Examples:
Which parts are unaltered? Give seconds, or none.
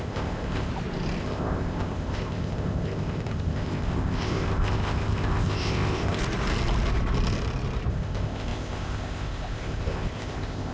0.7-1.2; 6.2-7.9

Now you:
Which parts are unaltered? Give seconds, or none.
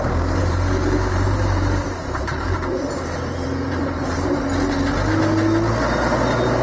0.0-0.4; 4.4-6.6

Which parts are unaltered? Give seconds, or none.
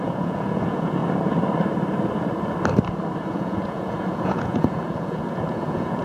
1.0-3.3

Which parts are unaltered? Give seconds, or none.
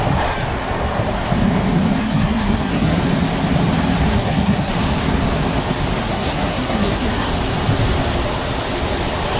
0.0-2.0; 3.0-4.1; 4.7-6.0; 7.3-9.4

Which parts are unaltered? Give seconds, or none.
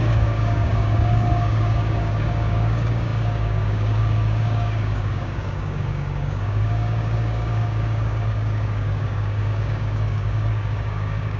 none